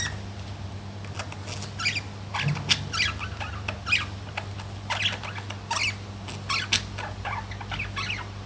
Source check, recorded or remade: recorded